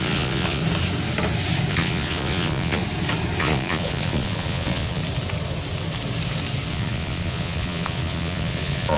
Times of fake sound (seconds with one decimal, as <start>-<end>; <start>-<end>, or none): 0.0-0.6; 1.7-2.8; 3.4-5.0; 6.7-9.0